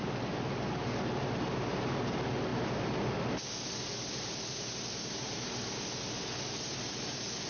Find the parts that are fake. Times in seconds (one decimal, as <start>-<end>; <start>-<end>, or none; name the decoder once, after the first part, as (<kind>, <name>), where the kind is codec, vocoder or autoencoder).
none